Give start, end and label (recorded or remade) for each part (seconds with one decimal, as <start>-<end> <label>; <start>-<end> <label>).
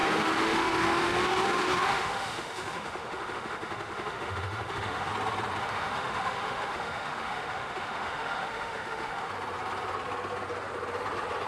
0.0-5.1 remade; 5.1-5.6 recorded; 5.6-9.3 remade; 9.3-11.5 recorded